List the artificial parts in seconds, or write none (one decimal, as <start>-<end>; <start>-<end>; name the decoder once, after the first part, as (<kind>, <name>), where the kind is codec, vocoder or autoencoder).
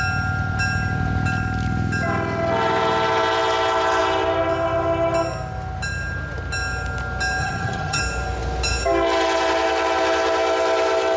7.4-8.0 (vocoder, HiFi-GAN)